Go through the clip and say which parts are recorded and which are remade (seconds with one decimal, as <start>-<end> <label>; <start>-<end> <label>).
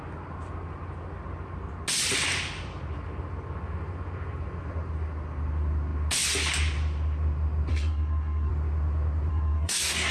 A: 0.0-7.7 recorded; 7.7-8.5 remade; 8.5-9.3 recorded; 9.3-10.1 remade